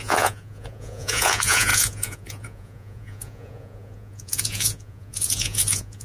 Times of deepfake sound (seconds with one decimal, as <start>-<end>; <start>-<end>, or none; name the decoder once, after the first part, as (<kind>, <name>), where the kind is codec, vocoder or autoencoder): 0.0-6.0 (vocoder, Vocos)